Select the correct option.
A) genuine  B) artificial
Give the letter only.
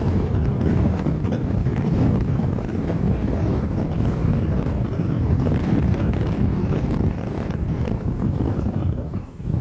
B